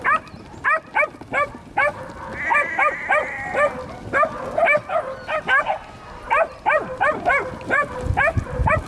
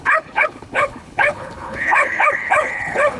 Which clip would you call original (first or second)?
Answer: first